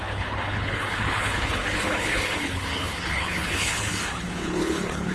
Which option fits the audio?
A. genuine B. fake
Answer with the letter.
B